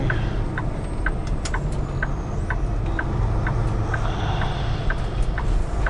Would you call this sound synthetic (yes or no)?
no